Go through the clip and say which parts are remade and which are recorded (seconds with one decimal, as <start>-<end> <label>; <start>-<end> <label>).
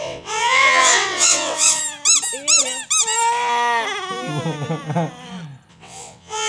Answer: 0.0-1.8 remade; 1.8-5.7 recorded; 5.7-6.5 remade